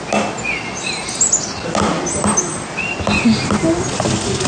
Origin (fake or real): real